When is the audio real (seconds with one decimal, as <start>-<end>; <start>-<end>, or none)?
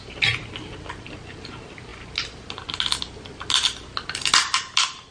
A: 0.0-5.1